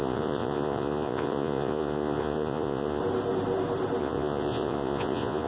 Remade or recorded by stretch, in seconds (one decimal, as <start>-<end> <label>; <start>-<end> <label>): 0.0-3.0 remade; 3.0-4.0 recorded; 4.0-5.5 remade